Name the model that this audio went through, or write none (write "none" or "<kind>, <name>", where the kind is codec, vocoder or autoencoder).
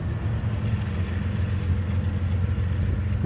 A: none